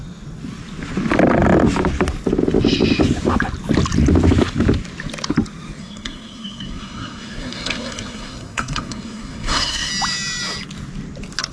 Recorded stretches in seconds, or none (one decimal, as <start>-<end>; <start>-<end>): 0.0-5.8; 9.9-11.5